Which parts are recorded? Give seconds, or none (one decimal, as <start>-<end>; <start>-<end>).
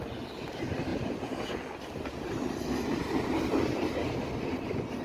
0.0-0.9; 1.6-5.0